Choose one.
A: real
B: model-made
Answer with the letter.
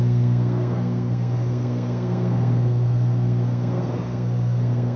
B